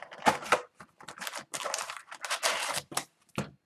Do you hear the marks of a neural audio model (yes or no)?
no